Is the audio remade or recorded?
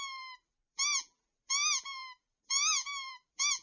remade